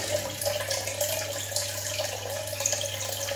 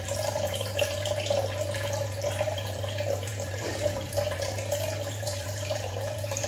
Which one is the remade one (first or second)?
second